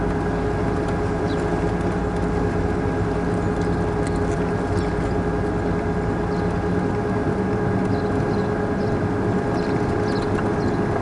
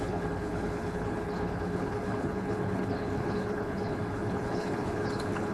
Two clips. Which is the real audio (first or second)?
first